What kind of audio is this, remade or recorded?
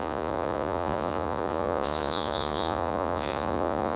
remade